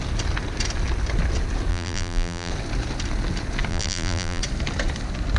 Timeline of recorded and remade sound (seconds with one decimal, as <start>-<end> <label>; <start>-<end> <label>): 0.0-1.7 recorded; 1.7-2.5 remade; 2.5-3.7 recorded; 3.7-4.4 remade; 4.4-5.4 recorded